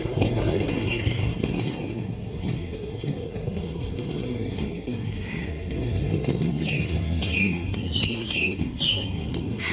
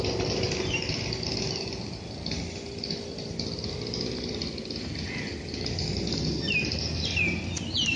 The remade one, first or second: first